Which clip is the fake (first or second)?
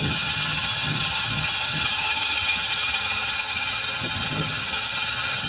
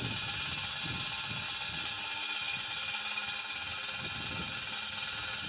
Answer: first